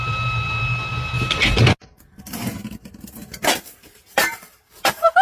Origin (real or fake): real